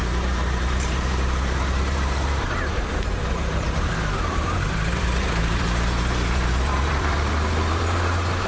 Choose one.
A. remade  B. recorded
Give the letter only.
A